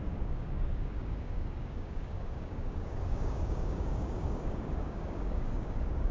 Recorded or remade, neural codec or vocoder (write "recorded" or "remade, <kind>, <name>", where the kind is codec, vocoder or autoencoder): remade, codec, DAC